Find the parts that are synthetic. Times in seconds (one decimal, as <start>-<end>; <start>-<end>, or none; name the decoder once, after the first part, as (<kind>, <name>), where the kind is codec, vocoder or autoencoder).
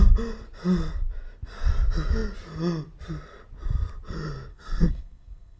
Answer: 4.5-5.6 (codec, SNAC)